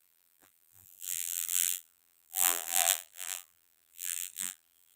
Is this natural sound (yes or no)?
no